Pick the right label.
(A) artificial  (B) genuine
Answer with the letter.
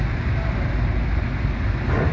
B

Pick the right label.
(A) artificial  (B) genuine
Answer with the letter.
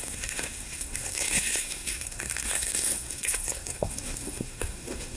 A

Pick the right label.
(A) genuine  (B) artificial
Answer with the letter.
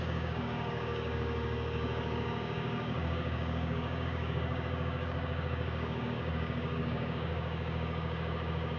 B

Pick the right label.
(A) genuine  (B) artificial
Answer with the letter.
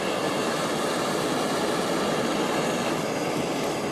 A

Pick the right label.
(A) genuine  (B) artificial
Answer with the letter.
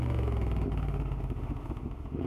B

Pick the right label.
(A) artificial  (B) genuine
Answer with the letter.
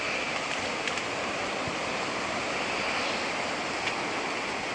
A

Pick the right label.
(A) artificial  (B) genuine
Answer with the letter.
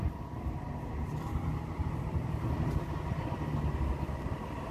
A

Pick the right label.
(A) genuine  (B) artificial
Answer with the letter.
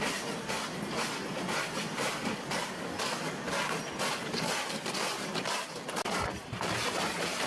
A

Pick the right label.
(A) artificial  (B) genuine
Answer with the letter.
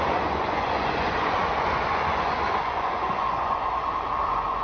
A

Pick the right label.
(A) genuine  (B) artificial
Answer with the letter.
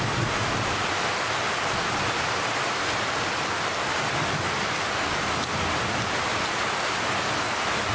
A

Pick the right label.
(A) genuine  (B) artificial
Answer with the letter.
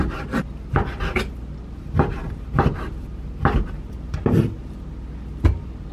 A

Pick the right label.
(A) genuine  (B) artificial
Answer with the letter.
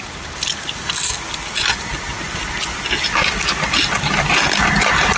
A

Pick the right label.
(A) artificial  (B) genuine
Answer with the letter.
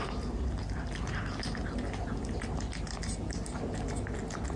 B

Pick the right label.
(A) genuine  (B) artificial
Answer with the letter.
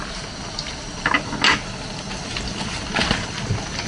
A